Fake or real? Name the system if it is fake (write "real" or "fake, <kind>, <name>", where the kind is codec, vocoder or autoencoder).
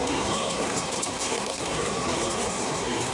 fake, codec, SNAC